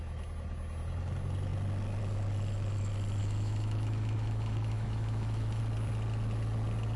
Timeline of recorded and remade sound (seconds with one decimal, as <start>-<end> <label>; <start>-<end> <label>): 0.0-3.2 recorded; 3.2-5.6 remade; 5.6-7.0 recorded